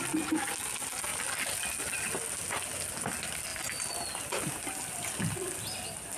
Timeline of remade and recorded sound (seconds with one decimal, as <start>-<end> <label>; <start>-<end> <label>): 0.0-6.2 recorded